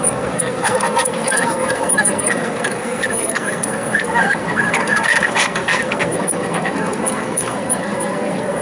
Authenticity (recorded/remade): remade